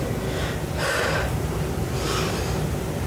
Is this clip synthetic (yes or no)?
no